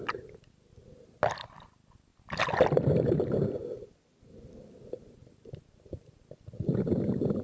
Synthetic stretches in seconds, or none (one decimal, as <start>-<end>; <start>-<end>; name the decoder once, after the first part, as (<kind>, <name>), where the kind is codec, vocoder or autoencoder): none